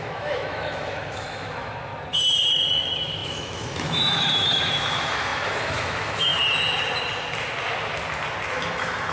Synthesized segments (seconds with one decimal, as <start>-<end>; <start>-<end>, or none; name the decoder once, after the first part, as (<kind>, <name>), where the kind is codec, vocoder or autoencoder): 0.0-1.9 (autoencoder, DAC-VAE); 2.5-6.3; 8.7-9.1